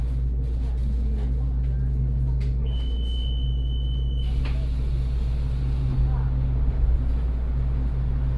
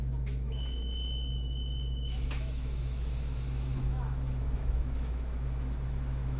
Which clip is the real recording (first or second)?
first